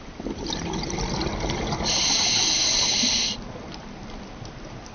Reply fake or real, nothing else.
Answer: real